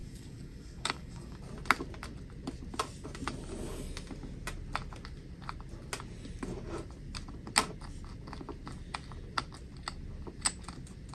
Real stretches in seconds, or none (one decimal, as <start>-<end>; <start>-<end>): 1.4-11.1